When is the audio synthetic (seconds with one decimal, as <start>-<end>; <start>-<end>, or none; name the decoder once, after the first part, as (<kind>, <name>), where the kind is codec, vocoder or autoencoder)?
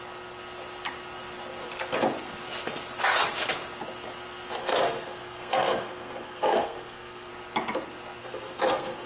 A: 4.6-7.3 (codec, SNAC); 8.2-9.1